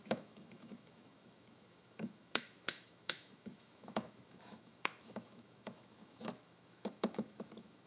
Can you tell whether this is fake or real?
fake